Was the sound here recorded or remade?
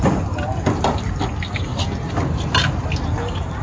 recorded